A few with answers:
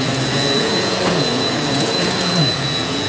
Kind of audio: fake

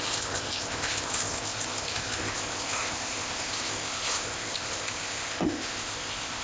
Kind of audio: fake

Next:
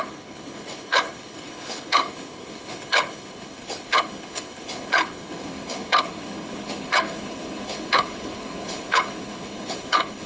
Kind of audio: fake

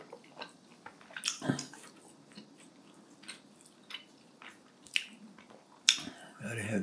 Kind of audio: real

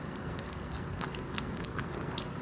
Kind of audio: fake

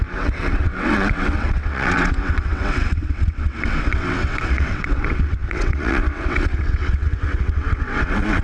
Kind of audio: fake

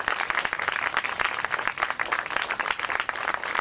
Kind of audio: real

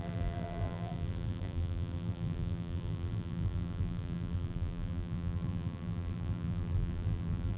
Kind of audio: fake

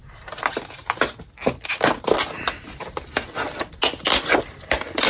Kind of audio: real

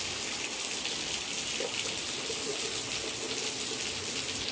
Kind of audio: real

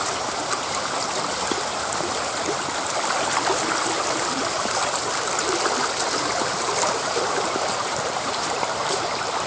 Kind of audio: real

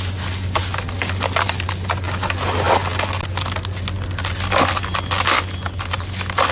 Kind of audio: real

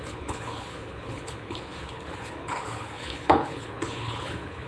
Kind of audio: fake